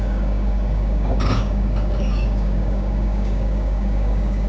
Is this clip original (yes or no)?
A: no